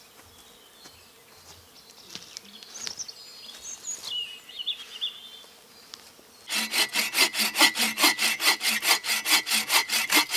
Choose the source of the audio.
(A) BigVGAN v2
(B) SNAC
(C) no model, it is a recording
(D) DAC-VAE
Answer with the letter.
C